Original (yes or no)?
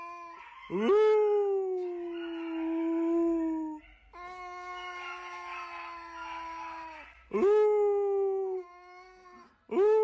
yes